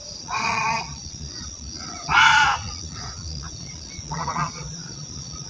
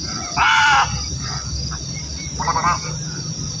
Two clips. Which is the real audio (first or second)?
second